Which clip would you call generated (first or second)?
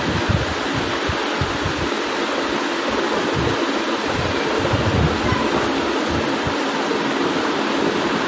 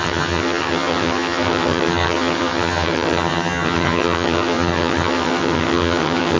second